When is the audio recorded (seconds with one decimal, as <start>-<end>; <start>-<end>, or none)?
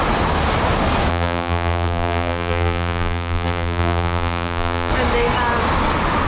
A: 0.0-1.1; 4.9-6.3